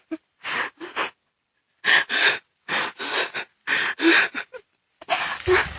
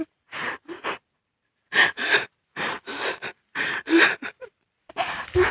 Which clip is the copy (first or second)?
second